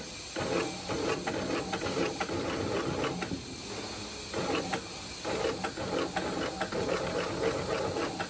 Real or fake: real